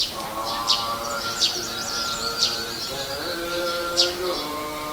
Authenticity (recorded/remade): remade